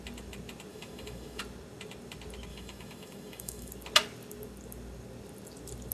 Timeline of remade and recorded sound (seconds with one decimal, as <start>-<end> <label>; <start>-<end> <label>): 0.0-0.7 recorded; 0.7-1.4 remade; 1.4-2.5 recorded; 2.5-3.7 remade; 3.7-5.9 recorded